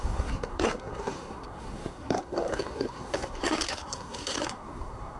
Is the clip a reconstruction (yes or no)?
yes